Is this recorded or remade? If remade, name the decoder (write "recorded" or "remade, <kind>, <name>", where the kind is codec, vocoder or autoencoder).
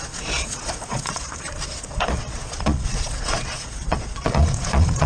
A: remade, vocoder, Vocos